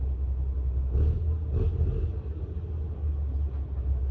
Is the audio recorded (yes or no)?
yes